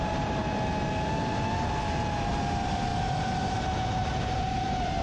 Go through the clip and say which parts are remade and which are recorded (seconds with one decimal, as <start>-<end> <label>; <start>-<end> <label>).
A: 0.0-0.4 remade; 0.4-2.3 recorded; 2.3-2.9 remade; 2.9-3.5 recorded; 3.5-5.0 remade